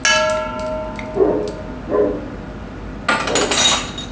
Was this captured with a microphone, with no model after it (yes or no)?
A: yes